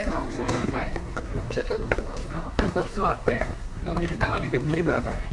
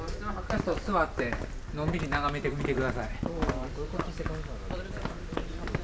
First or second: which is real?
second